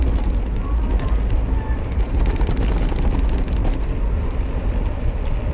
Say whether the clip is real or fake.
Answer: real